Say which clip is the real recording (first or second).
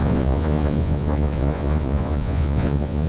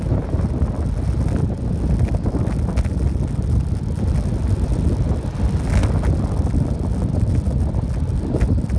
second